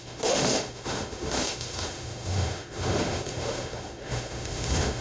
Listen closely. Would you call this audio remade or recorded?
remade